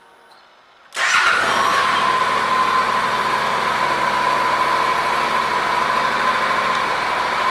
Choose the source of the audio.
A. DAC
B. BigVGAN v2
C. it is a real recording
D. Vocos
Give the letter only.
C